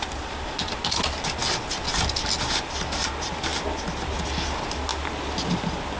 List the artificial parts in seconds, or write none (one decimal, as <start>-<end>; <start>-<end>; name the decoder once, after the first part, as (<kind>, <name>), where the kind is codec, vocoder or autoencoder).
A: none

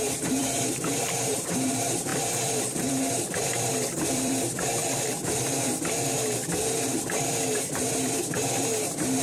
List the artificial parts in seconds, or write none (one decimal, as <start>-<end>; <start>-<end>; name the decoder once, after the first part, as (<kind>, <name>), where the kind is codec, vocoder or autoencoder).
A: 0.0-4.8 (vocoder, BigVGAN v2); 7.6-9.2

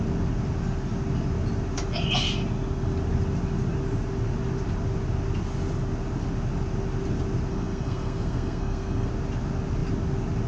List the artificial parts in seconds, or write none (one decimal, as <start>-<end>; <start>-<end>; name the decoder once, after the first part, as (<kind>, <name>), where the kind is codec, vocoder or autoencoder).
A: 7.5-9.1 (codec, SNAC)

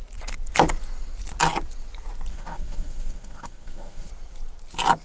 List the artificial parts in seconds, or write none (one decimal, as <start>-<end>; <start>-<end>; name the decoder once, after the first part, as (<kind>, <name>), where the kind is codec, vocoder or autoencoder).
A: 2.3-4.1 (autoencoder, DAC-VAE)

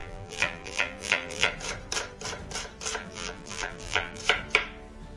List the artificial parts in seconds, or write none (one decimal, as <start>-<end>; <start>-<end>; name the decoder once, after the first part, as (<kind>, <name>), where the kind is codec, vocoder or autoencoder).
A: 0.0-1.5 (vocoder, BigVGAN v2); 3.0-4.2